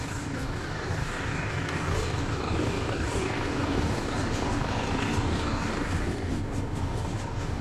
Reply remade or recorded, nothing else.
remade